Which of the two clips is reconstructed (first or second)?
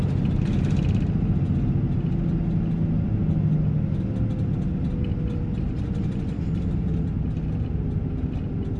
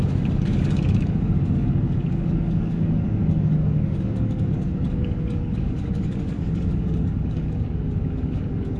second